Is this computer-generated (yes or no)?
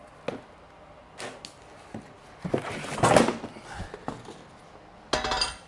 no